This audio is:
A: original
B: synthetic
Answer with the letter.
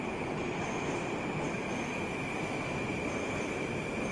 A